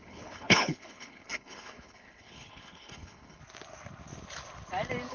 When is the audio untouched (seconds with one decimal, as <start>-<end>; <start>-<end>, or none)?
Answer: 3.4-5.1